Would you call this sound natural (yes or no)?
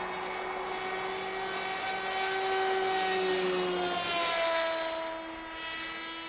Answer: yes